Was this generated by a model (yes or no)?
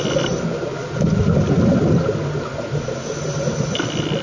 no